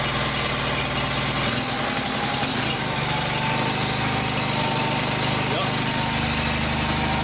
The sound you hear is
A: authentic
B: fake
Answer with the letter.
A